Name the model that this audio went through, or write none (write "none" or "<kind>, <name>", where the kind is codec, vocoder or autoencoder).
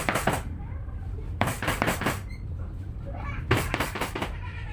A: vocoder, BigVGAN v2